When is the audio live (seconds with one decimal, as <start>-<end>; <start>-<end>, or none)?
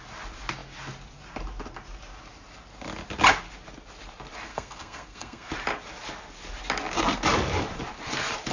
0.0-4.5; 5.5-8.5